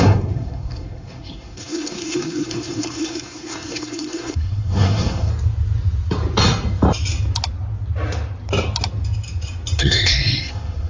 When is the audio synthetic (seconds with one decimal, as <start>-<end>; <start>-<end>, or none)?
0.0-5.3; 9.8-10.9